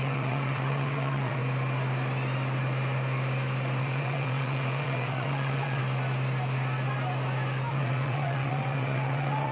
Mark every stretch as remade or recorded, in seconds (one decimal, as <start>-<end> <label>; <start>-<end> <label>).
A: 0.0-1.4 remade; 1.4-3.8 recorded; 3.8-5.8 remade; 5.8-7.7 recorded; 7.7-9.5 remade